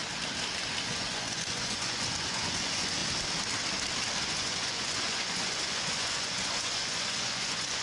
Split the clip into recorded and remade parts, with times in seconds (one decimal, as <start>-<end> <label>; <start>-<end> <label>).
0.0-0.8 recorded; 0.8-3.0 remade; 3.0-4.2 recorded; 4.2-7.8 remade